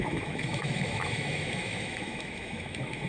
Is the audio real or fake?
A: fake